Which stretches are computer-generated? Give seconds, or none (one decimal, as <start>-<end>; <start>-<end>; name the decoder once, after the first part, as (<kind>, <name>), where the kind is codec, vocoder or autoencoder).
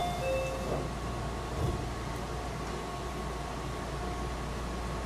none